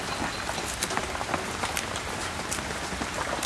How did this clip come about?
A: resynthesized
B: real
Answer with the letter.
B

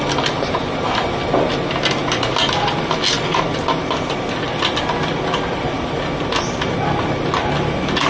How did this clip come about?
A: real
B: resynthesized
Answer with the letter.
A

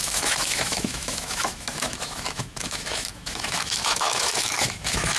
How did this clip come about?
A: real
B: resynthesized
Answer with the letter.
B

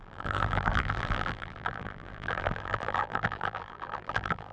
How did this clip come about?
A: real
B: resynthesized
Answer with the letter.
B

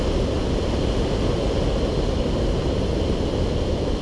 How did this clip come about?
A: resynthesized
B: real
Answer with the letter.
B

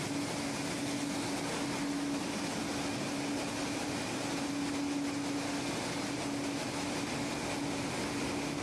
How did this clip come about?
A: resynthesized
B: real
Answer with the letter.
B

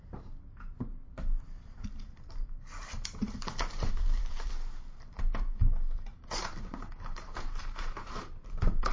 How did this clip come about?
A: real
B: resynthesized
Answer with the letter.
B